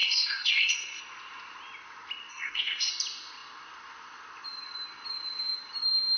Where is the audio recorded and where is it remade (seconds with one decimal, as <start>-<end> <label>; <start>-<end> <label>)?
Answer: 0.0-1.0 remade; 1.0-2.3 recorded; 2.3-2.9 remade; 2.9-6.2 recorded